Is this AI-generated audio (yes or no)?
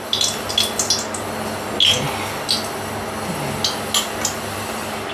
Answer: no